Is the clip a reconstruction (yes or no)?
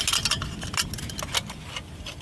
no